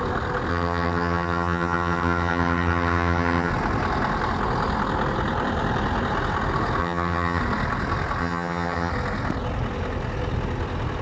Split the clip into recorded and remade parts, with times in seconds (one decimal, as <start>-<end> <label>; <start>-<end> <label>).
0.0-0.5 recorded; 0.5-3.5 remade; 3.5-6.8 recorded; 6.8-7.4 remade; 7.4-8.2 recorded; 8.2-8.9 remade; 8.9-11.0 recorded